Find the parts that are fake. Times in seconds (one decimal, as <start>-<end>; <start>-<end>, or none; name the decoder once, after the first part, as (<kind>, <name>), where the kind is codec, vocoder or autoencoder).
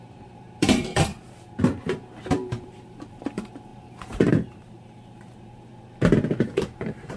0.0-1.1 (vocoder, BigVGAN v2); 2.2-5.7; 6.5-7.2